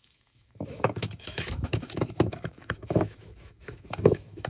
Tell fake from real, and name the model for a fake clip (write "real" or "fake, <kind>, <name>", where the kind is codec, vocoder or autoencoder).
fake, autoencoder, DAC-VAE